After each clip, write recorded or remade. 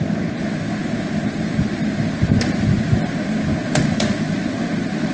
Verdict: recorded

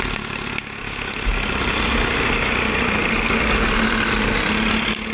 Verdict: recorded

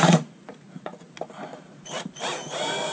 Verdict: remade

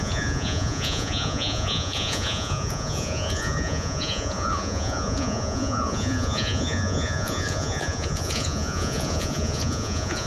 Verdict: remade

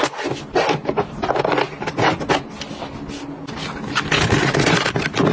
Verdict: recorded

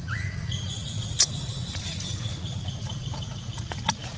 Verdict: remade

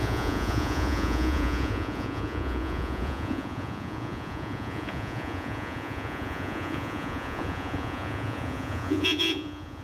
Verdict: remade